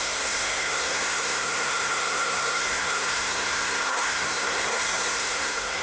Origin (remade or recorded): remade